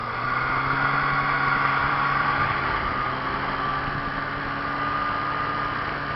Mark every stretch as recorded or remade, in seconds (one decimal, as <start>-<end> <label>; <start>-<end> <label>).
0.0-1.8 recorded; 1.8-2.8 remade; 2.8-6.2 recorded